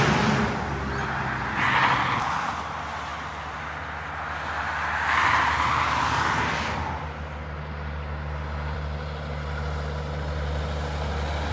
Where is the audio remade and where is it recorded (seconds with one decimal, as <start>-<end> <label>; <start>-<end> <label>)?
0.0-11.5 recorded